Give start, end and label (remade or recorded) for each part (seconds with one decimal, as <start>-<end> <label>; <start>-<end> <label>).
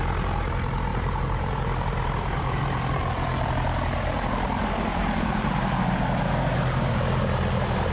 0.0-0.9 recorded; 0.9-5.6 remade; 5.6-7.9 recorded